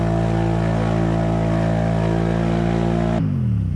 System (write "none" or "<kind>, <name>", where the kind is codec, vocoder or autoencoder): none